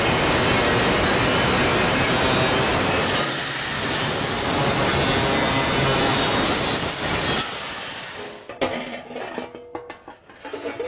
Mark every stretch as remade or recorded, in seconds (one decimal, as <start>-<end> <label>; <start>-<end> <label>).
0.0-2.7 recorded; 2.7-4.9 remade; 4.9-5.9 recorded; 5.9-6.8 remade; 6.8-10.9 recorded